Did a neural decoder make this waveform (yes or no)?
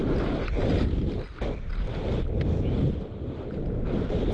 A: no